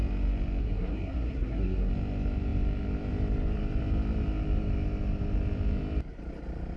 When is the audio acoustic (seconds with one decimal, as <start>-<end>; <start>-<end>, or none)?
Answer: 0.0-0.6; 1.9-6.8